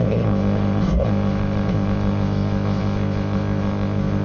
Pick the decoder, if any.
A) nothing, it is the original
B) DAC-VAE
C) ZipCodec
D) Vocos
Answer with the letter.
C